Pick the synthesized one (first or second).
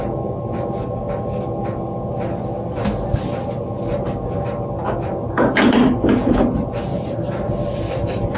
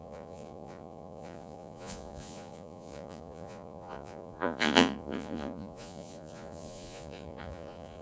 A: second